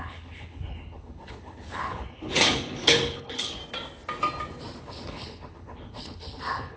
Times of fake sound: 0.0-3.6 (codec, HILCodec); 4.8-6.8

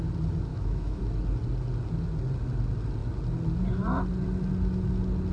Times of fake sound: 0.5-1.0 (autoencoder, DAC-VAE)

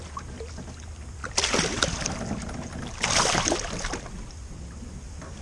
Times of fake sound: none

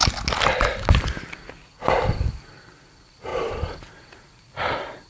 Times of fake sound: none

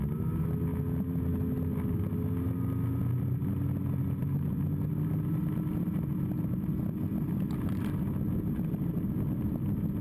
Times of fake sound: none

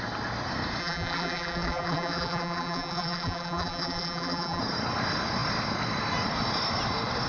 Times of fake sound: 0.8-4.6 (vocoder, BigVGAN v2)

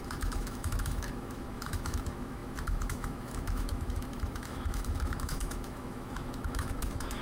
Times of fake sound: 0.0-7.2 (autoencoder, DAC-VAE)

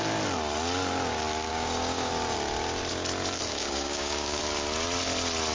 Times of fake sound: 1.5-2.1 (codec, DAC); 3.6-4.4